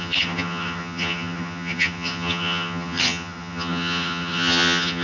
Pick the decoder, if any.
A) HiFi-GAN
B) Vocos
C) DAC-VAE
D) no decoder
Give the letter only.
A